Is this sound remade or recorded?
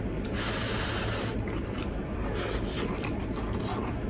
recorded